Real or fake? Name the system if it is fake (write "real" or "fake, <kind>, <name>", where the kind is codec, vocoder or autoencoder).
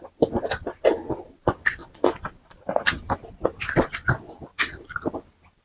real